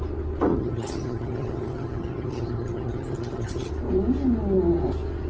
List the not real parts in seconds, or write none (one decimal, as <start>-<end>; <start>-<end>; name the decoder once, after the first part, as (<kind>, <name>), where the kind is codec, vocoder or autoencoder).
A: 0.5-3.7 (vocoder, HiFi-GAN)

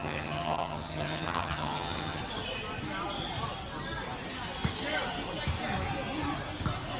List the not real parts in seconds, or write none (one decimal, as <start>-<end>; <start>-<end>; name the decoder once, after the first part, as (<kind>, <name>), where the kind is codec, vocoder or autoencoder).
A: 0.0-2.2 (vocoder, HiFi-GAN)

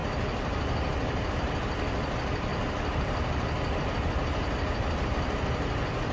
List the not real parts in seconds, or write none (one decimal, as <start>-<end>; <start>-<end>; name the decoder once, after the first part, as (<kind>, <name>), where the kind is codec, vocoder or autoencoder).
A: none

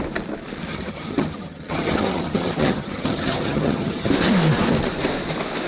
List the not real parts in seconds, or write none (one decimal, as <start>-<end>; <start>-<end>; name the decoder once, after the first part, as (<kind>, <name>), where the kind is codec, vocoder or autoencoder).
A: 0.7-4.1 (vocoder, HiFi-GAN)

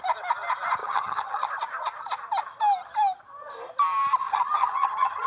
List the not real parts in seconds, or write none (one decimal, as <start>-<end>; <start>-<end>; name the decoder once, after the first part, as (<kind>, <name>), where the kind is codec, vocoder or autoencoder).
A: 0.8-1.5 (vocoder, HiFi-GAN); 4.2-5.3

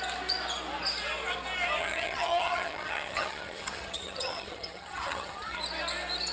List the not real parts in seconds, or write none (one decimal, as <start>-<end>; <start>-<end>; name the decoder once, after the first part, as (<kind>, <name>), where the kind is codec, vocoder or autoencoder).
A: 1.8-5.6 (vocoder, HiFi-GAN)